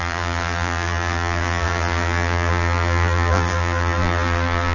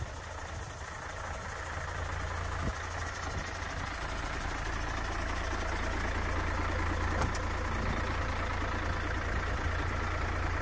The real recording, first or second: second